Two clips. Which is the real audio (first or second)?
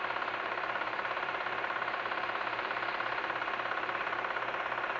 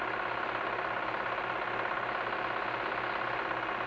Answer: second